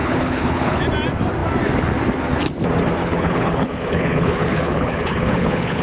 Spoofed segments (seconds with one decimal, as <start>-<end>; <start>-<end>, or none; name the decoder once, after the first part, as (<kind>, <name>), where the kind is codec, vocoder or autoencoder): 0.0-0.8 (codec, HILCodec); 3.0-5.8